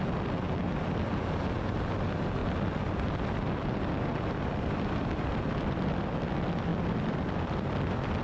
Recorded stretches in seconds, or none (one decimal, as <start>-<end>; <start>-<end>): 0.0-2.4; 6.1-6.7

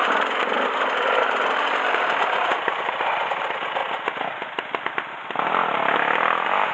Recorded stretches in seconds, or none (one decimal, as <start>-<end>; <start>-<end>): 3.8-5.8

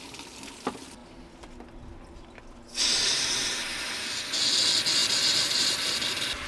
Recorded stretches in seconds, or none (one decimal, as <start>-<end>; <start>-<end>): 0.0-5.0; 6.0-6.5